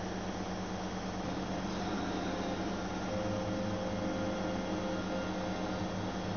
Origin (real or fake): real